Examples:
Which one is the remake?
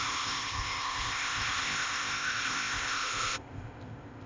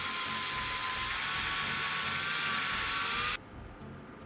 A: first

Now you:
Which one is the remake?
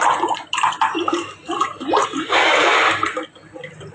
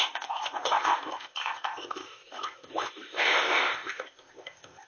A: second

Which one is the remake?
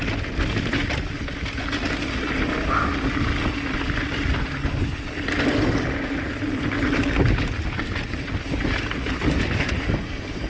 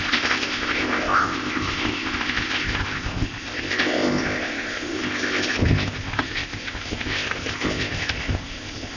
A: second